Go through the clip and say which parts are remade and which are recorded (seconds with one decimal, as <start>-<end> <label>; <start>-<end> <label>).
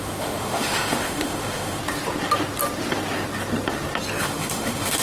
0.0-1.8 remade; 1.8-4.2 recorded; 4.2-5.0 remade